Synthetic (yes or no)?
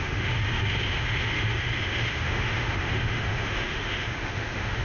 yes